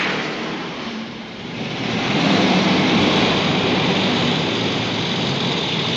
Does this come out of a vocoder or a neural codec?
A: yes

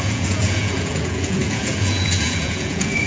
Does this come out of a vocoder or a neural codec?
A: yes